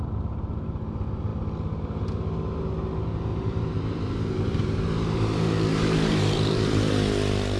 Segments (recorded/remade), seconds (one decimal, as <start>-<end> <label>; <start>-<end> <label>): 0.0-3.3 recorded; 3.3-4.8 remade; 4.8-5.7 recorded; 5.7-6.9 remade; 6.9-7.6 recorded